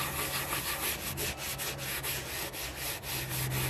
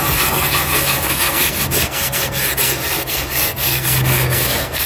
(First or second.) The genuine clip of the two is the first